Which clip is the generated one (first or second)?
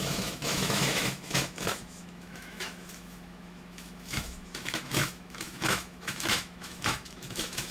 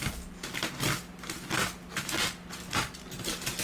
first